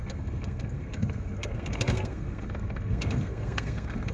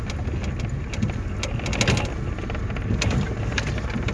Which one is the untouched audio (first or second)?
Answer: second